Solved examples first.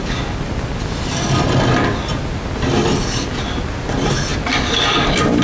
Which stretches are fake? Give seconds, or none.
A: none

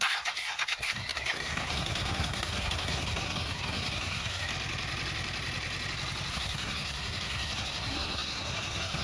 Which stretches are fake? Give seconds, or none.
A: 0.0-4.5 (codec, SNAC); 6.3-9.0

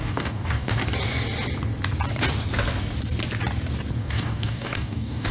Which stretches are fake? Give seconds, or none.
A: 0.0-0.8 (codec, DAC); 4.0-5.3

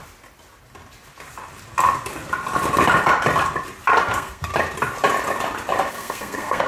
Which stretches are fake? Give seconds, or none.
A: 4.0-4.5 (codec, SNAC); 5.9-6.7

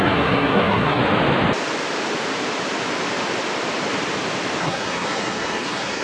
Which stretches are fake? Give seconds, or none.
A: 0.0-1.0 (codec, SNAC); 4.6-6.0